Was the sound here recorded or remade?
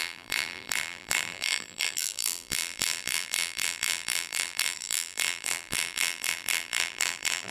remade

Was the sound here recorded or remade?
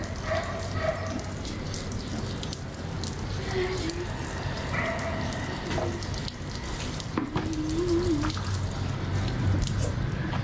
recorded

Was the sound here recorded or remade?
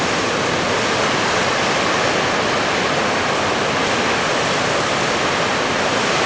recorded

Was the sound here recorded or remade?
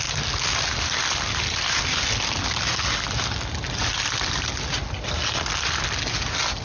recorded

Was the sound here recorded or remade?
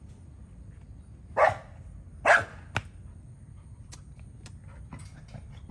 recorded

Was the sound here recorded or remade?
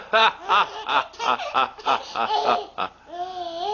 recorded